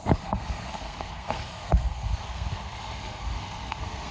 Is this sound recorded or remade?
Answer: remade